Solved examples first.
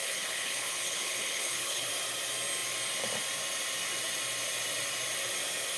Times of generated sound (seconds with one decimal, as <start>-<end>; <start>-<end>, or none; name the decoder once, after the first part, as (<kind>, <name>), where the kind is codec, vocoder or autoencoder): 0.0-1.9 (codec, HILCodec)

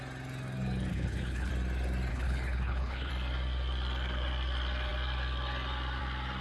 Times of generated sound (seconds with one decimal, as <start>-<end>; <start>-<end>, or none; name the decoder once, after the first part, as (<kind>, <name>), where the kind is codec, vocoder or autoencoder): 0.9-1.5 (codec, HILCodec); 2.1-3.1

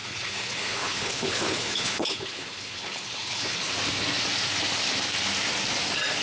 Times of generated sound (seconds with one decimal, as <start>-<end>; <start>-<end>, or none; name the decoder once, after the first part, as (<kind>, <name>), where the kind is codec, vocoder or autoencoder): 0.0-3.7 (codec, HILCodec)

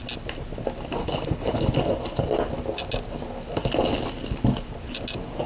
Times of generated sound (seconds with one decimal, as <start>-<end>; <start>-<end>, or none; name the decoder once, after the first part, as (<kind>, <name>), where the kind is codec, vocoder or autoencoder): 1.0-1.7 (codec, HILCodec)

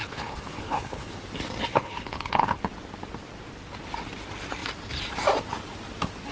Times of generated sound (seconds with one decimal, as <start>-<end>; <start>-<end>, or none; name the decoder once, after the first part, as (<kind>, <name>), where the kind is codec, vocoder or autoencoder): 0.0-1.2 (codec, HILCodec); 1.7-2.7

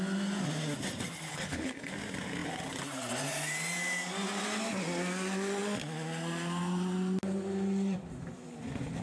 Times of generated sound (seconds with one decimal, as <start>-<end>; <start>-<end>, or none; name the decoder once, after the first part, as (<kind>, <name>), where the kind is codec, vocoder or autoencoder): 1.3-1.9 (codec, HILCodec)